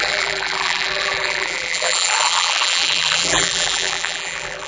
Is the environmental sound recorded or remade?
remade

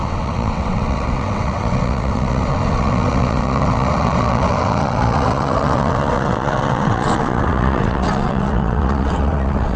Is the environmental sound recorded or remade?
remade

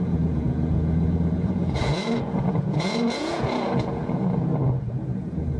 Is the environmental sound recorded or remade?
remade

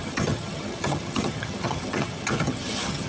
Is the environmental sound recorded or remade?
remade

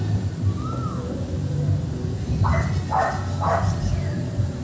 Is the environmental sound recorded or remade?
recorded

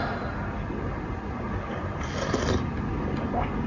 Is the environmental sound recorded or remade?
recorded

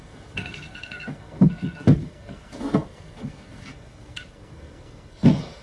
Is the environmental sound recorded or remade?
remade